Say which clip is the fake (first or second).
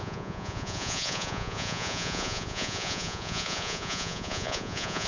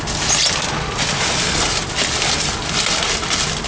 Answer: first